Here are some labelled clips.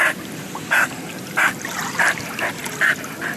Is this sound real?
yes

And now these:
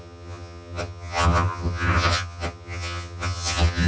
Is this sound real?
no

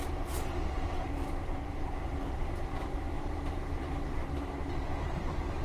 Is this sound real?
no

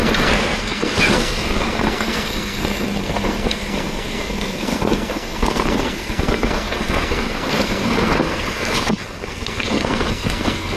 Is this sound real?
no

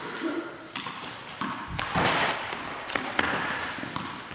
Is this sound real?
yes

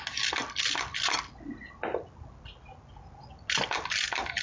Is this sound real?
yes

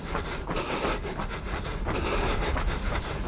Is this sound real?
yes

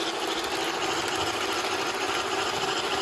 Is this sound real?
yes